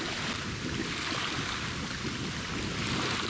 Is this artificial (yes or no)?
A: no